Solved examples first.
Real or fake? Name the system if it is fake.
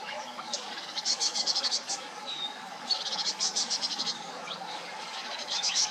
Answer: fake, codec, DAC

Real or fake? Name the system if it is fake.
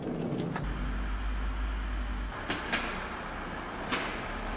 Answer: real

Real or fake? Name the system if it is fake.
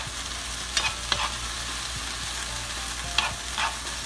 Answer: real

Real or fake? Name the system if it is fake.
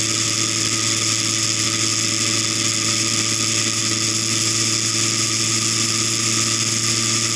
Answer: real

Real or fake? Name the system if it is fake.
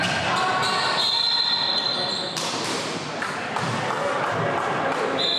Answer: real